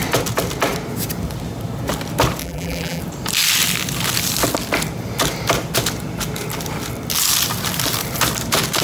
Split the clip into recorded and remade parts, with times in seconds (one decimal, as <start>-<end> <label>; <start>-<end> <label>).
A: 0.0-2.4 recorded; 2.4-3.0 remade; 3.0-8.8 recorded